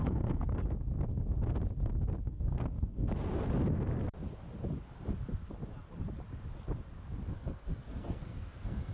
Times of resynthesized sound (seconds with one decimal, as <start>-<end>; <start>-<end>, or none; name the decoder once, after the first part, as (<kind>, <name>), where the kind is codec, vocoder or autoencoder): 0.0-0.5 (codec, SNAC); 2.2-3.1; 7.3-8.9